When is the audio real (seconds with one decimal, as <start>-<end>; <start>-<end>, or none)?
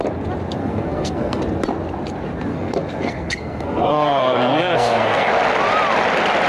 0.0-0.6; 1.4-2.5; 5.3-6.5